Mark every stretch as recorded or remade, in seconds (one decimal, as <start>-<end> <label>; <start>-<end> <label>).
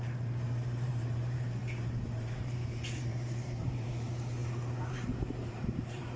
0.0-4.4 remade; 4.4-4.9 recorded; 4.9-6.2 remade